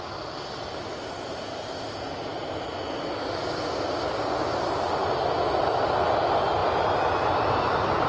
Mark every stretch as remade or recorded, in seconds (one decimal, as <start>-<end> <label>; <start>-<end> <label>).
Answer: 0.0-8.1 recorded